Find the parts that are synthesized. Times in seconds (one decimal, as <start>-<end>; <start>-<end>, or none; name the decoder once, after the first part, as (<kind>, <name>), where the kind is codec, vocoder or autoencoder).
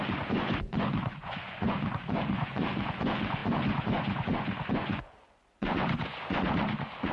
0.0-7.1 (vocoder, Vocos)